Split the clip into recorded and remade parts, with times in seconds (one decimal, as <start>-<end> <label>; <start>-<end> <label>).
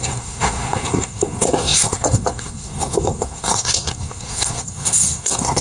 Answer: 0.0-5.6 remade